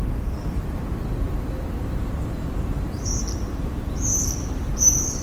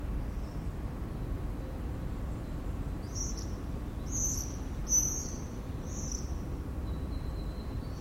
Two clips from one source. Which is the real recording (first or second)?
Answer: second